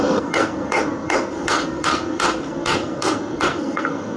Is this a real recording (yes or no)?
no